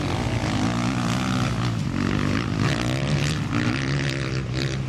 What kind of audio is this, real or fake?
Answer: real